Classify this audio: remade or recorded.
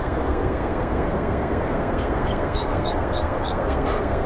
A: remade